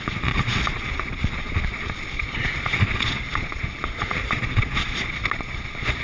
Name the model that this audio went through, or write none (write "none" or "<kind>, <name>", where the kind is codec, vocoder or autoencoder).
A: vocoder, Vocos